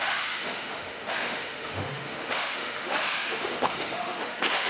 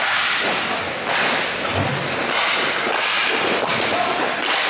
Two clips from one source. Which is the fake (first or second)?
first